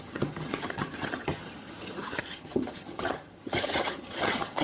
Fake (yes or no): yes